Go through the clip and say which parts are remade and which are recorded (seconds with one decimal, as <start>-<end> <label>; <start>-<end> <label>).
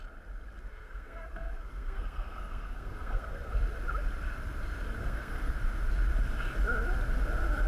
0.0-0.7 recorded; 0.7-3.5 remade; 3.5-5.0 recorded; 5.0-5.5 remade; 5.5-7.7 recorded